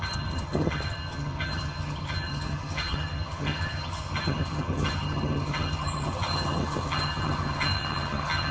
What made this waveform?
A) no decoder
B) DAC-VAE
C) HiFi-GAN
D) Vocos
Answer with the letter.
C